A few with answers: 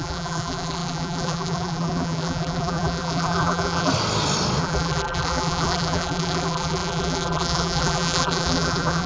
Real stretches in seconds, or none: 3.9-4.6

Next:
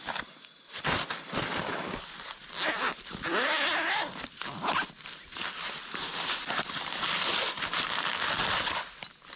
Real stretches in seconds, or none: 0.0-9.4

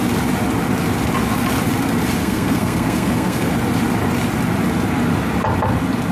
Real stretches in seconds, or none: 0.0-2.2; 3.5-6.1

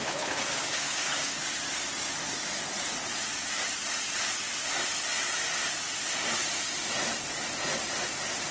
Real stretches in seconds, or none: 1.4-8.5

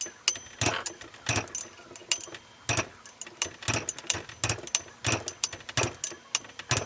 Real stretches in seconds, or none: 0.0-6.9

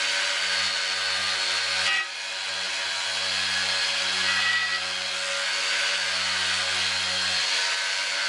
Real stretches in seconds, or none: 0.0-8.3